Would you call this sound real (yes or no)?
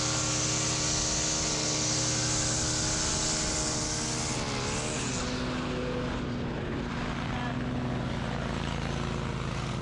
yes